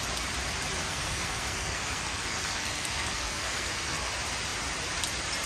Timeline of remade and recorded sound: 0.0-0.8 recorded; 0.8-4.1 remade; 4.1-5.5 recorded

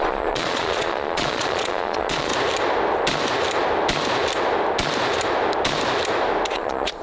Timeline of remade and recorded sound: 0.0-2.3 remade; 2.3-6.5 recorded; 6.5-7.0 remade

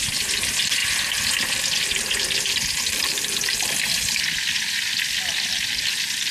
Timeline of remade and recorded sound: 0.0-6.3 recorded

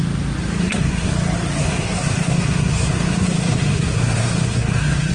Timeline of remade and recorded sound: 0.0-0.6 recorded; 0.6-1.1 remade; 1.1-1.6 recorded; 1.6-5.1 remade

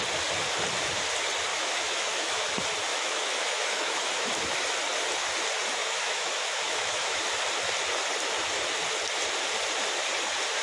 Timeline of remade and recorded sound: 0.0-1.5 recorded; 1.5-2.5 remade; 2.5-2.9 recorded; 2.9-4.3 remade; 4.3-5.8 recorded; 5.8-7.2 remade; 7.2-10.6 recorded

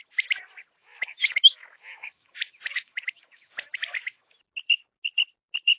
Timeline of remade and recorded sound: 0.0-0.8 recorded; 0.8-4.3 remade; 4.3-5.8 recorded

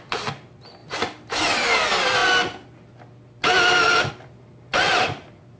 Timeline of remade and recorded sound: 0.0-5.6 recorded

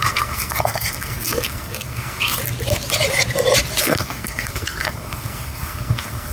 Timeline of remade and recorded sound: 0.0-2.4 remade; 2.4-3.8 recorded; 3.8-6.3 remade